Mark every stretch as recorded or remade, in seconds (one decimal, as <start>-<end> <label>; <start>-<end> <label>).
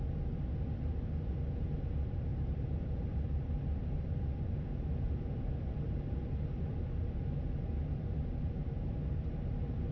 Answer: 0.0-2.3 recorded; 2.3-7.0 remade; 7.0-9.9 recorded